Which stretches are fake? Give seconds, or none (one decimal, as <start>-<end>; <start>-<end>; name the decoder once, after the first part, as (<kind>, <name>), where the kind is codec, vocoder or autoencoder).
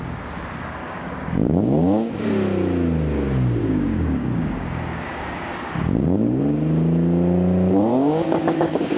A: 0.8-2.3 (codec, DAC); 3.6-6.4; 7.9-9.0